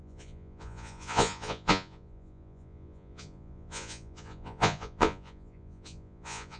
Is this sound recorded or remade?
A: remade